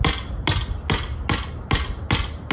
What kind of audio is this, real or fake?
real